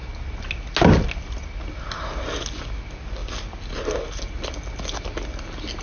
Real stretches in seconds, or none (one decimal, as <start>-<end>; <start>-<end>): 0.0-5.8